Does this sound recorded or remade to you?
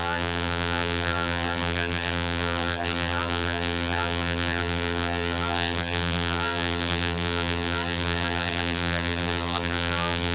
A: remade